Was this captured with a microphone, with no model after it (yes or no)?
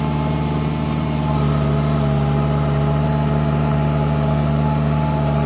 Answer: yes